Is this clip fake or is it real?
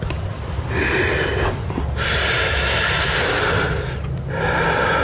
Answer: real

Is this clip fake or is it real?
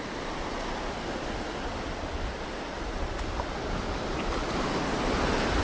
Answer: real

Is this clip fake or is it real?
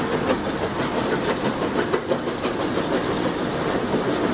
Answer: real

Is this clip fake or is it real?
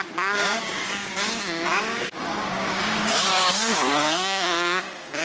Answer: fake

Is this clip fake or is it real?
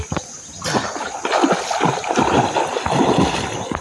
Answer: real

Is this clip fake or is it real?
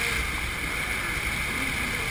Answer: real